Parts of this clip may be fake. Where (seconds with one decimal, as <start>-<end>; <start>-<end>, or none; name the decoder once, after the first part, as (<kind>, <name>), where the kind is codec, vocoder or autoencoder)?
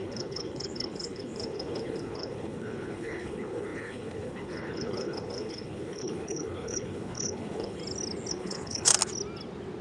0.0-7.8 (codec, HILCodec); 8.3-8.9